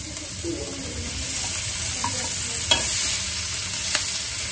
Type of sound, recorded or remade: recorded